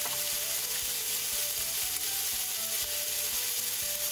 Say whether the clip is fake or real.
real